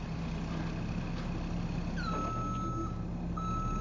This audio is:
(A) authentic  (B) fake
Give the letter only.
A